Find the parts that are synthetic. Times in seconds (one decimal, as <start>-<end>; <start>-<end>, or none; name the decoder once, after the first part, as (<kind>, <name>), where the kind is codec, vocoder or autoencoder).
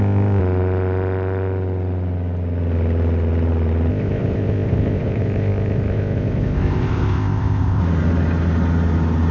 0.0-0.4 (codec, ZipCodec); 3.9-7.8